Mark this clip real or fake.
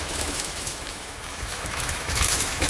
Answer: fake